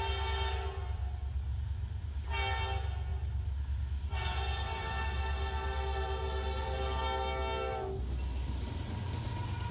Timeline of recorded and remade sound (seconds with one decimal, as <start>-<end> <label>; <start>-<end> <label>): 0.0-9.7 recorded